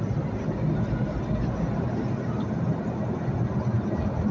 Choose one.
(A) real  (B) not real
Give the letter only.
A